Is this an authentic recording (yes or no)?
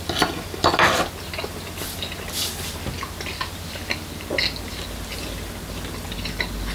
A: yes